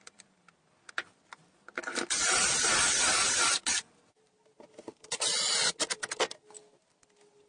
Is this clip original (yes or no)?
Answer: yes